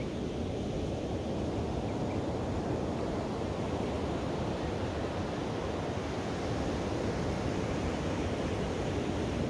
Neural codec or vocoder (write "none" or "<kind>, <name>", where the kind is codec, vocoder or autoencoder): none